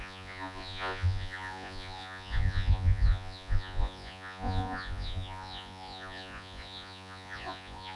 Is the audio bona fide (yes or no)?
no